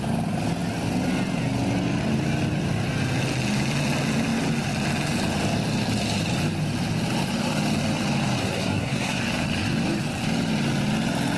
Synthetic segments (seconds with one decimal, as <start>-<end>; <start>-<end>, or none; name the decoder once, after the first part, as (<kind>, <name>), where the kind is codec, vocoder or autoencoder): 8.4-9.2 (codec, SNAC)